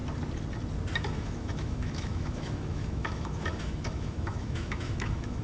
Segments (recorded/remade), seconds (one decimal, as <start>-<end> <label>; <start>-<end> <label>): 0.0-1.0 recorded; 1.0-5.4 remade